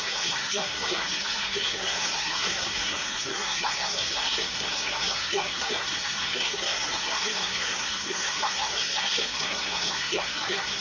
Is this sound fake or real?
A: fake